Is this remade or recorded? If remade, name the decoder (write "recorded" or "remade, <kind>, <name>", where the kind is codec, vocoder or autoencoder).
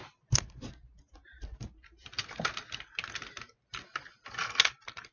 recorded